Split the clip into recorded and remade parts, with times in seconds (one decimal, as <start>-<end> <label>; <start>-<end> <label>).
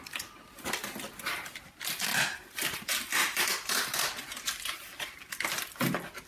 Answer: 0.0-3.2 recorded; 3.2-4.0 remade; 4.0-6.3 recorded